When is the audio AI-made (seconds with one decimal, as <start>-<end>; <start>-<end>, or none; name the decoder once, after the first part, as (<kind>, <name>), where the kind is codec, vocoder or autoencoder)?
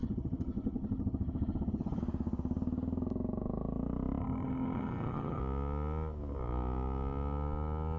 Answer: 0.0-2.0 (vocoder, HiFi-GAN); 4.2-5.4